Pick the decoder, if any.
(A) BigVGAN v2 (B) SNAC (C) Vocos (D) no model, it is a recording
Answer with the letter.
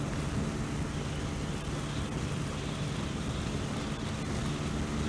D